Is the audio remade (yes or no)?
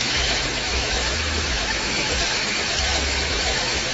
yes